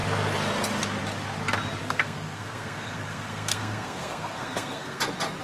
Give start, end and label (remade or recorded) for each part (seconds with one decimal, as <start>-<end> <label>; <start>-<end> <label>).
0.0-1.8 recorded; 1.8-5.0 remade; 5.0-5.4 recorded